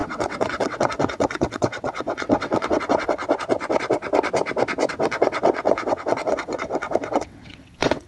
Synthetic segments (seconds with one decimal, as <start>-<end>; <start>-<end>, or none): 0.0-3.2; 4.9-8.1

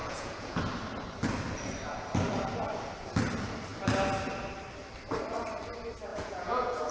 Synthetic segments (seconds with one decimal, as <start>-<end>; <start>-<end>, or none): 0.0-0.6; 6.1-6.9

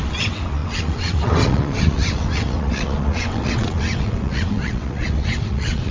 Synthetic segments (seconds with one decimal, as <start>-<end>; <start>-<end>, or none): 0.0-5.9

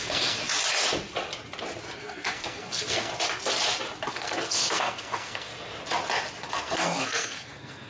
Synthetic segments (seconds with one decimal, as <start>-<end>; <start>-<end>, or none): 0.0-0.4; 2.0-3.1; 4.1-5.5; 6.5-7.9